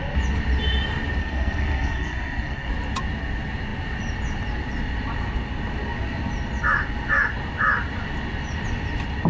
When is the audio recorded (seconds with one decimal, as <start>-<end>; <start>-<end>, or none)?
0.0-1.2; 2.7-9.3